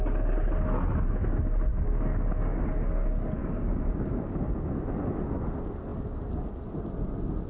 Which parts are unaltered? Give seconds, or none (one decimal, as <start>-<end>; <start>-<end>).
0.0-1.7; 2.6-3.4; 4.7-7.5